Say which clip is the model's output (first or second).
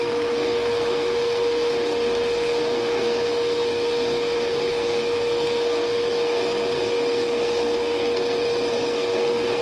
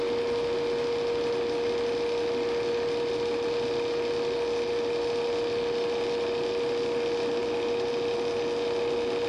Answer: first